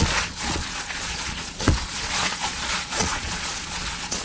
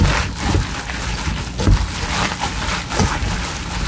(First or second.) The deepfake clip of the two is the first